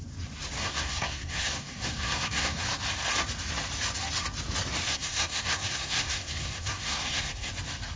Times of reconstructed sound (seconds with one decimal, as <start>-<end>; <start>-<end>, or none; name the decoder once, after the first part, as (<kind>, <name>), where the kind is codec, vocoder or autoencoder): 0.6-2.6 (codec, SNAC); 4.9-7.5